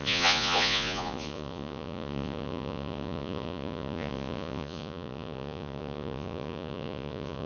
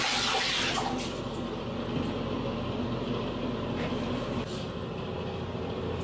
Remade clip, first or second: first